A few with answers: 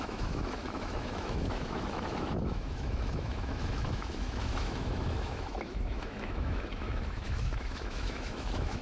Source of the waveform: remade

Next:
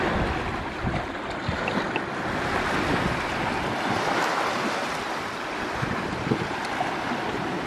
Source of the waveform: recorded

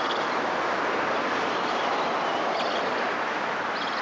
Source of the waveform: recorded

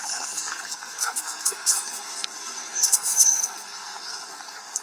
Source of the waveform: remade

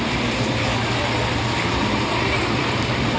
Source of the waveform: recorded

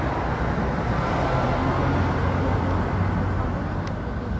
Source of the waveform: recorded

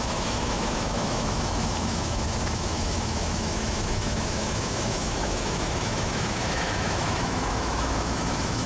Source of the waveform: remade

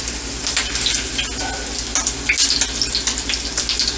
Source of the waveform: recorded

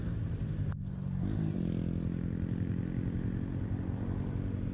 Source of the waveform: recorded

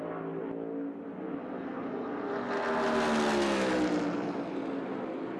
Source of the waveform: recorded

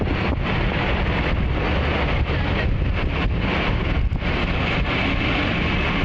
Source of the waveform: recorded